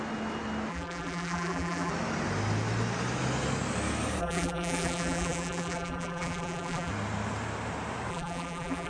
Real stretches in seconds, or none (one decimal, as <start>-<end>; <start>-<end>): 0.0-0.7; 1.9-4.2; 6.9-8.1